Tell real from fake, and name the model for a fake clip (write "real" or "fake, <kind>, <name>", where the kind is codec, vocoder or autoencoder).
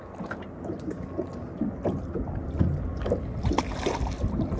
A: real